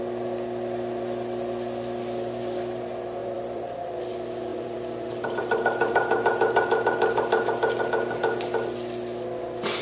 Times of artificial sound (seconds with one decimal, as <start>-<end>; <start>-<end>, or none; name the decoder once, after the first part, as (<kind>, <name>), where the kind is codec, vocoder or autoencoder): 3.2-4.1 (vocoder, BigVGAN v2); 4.5-5.4